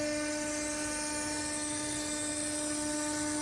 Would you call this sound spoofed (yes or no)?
no